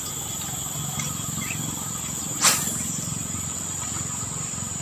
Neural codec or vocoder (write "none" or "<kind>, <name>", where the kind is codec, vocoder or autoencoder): none